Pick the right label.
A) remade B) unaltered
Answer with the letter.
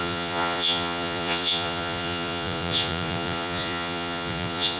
A